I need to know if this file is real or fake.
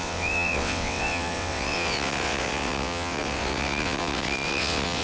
fake